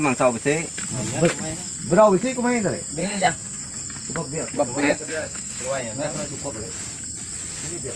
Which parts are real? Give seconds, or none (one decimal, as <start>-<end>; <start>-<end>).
0.0-3.0; 3.6-4.8; 5.6-8.0